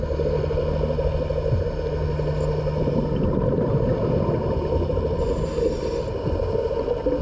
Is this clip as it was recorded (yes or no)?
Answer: yes